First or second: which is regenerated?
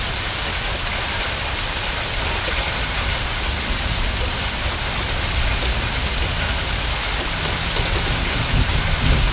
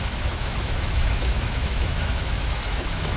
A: second